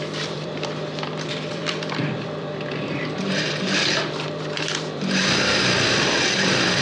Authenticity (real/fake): fake